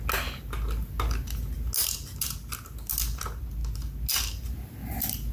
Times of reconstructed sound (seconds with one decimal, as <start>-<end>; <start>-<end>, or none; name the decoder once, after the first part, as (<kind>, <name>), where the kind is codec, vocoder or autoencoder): none

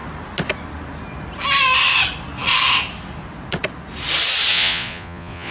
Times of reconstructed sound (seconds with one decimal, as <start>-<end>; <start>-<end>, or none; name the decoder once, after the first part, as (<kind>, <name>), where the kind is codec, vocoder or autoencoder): 4.5-5.5 (vocoder, Vocos)

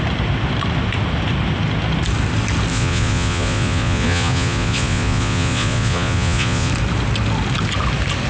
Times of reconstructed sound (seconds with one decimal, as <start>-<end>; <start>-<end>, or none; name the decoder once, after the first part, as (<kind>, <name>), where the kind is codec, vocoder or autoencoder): 2.7-6.7 (vocoder, Vocos)

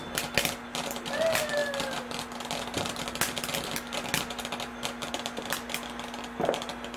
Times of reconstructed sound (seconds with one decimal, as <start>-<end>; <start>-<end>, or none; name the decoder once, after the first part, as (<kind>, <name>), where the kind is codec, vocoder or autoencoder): none

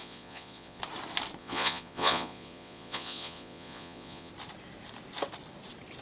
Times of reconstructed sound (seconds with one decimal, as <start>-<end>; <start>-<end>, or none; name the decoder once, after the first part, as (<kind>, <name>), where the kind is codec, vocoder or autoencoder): 0.0-0.8 (vocoder, Vocos); 1.4-4.3

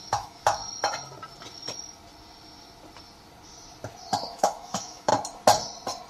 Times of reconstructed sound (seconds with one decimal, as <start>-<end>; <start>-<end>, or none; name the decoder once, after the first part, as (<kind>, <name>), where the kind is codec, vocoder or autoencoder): 0.0-0.6 (autoencoder, DAC-VAE); 4.3-5.1